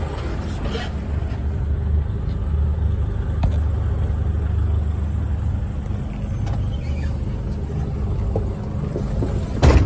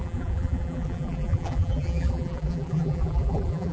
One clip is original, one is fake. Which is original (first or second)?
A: first